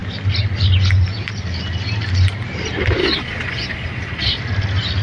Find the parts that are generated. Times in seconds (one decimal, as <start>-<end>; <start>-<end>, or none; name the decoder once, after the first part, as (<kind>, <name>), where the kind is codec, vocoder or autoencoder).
3.0-4.4 (vocoder, Vocos)